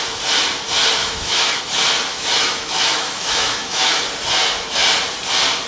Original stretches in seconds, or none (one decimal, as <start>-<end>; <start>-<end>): 0.0-1.0; 1.6-2.1; 4.0-5.7